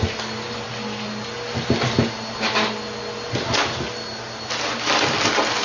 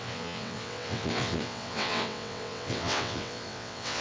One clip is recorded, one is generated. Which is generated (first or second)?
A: second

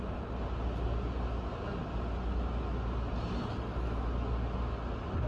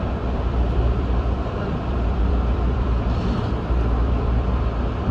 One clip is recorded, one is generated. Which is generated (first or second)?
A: second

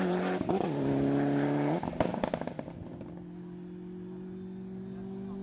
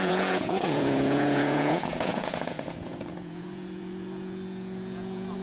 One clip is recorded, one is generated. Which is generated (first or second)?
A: second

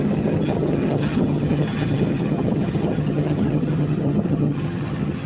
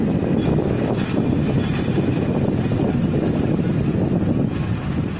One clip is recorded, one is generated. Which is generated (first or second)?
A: first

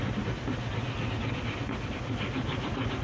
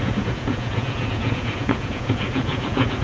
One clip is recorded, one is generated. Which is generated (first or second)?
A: second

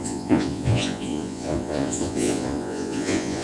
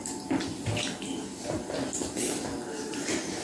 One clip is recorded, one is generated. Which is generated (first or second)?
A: first